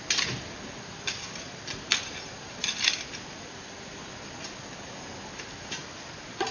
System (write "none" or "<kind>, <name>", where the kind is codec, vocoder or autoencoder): none